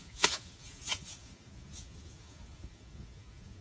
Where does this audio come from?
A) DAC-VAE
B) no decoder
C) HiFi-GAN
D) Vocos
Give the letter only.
D